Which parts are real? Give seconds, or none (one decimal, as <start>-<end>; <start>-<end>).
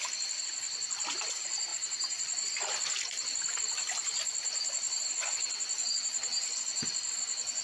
0.0-7.6